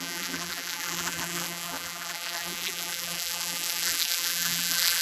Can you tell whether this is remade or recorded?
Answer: remade